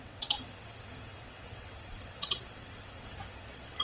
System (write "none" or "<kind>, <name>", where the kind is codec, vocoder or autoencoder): vocoder, WaveNeXt